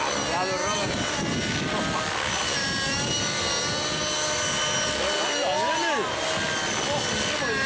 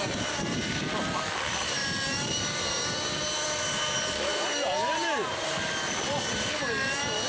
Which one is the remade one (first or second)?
second